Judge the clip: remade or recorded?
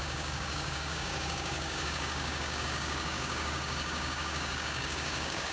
remade